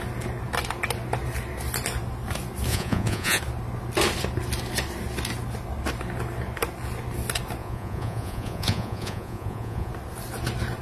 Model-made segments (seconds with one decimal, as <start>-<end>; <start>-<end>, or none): 2.7-3.4; 7.6-9.9